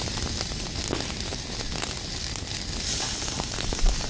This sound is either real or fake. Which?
real